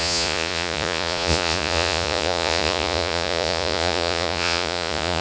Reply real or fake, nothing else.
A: fake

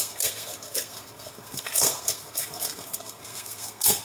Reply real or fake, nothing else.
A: fake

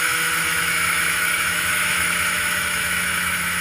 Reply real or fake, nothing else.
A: fake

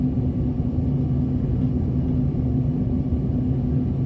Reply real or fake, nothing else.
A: real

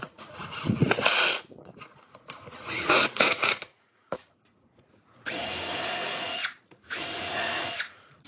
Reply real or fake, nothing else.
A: fake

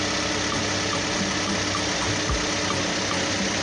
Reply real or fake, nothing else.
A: real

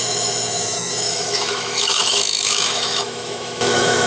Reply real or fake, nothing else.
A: fake